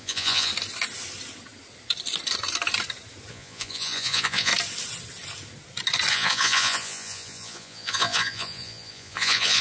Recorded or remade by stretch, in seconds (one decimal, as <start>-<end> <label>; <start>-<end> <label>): 0.0-0.5 remade; 0.5-3.3 recorded; 3.3-4.5 remade; 4.5-6.1 recorded; 6.1-9.6 remade